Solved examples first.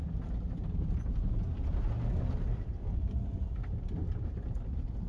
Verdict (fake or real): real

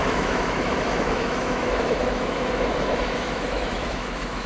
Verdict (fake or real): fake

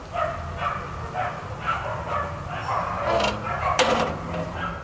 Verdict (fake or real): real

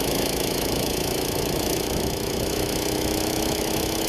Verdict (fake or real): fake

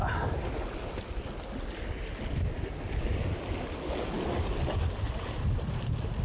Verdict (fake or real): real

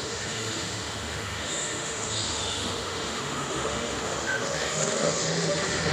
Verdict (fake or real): fake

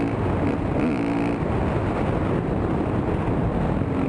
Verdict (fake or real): real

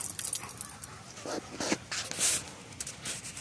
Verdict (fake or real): real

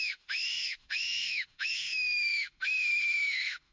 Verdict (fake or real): fake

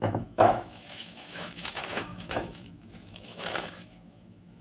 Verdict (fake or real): fake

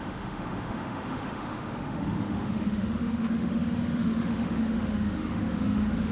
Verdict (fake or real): fake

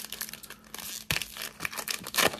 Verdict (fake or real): real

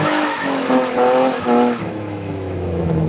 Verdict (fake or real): fake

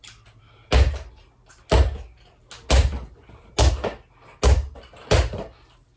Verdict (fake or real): real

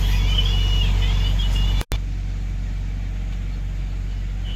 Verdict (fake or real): real